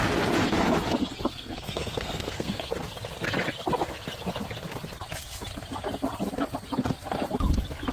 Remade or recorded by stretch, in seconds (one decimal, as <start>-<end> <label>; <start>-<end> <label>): 0.0-1.3 recorded; 1.3-2.7 remade; 2.7-7.9 recorded